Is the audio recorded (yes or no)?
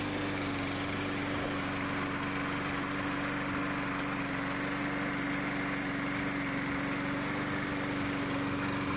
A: yes